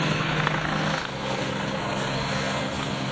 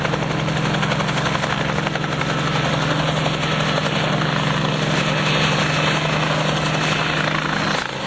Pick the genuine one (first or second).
second